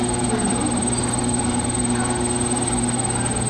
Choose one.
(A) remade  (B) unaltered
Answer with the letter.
B